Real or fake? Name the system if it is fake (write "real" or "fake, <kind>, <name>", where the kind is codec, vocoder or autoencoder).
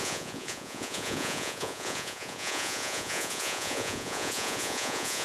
fake, vocoder, Vocos